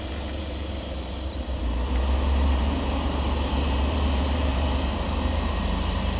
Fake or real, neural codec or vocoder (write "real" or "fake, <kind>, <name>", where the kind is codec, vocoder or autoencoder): fake, vocoder, BigVGAN v2